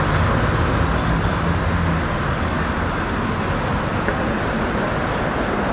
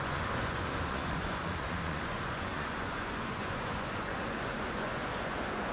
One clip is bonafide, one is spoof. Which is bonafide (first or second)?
first